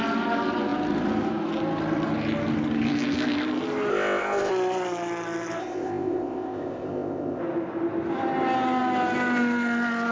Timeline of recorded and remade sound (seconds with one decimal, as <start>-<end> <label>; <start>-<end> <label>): 0.0-3.9 recorded; 3.9-4.5 remade; 4.5-5.6 recorded; 5.6-7.4 remade; 7.4-10.1 recorded